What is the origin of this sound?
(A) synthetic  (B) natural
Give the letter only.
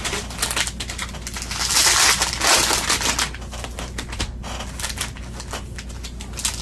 B